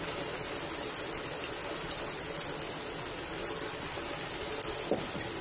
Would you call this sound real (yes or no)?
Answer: yes